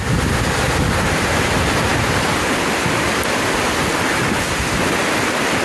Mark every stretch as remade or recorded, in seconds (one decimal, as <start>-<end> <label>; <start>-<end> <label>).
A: 0.0-5.6 recorded